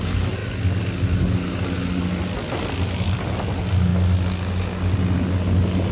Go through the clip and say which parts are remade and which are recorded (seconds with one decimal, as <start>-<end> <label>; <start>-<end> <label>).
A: 0.0-5.9 recorded